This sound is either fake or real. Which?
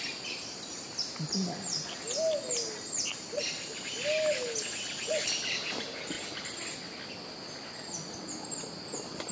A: real